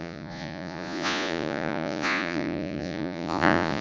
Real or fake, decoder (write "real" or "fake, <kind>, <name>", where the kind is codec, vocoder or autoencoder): fake, vocoder, Vocos